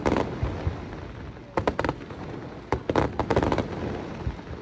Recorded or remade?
recorded